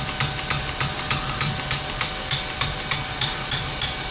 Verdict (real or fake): real